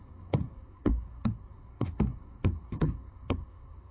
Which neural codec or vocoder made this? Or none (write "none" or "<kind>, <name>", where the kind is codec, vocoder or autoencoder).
codec, SNAC